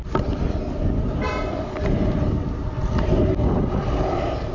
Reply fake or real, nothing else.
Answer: real